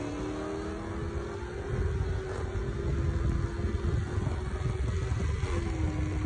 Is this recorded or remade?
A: recorded